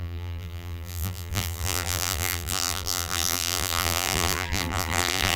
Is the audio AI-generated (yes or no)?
yes